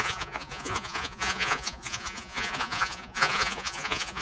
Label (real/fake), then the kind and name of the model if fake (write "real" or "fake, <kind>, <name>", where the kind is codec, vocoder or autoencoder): fake, vocoder, Vocos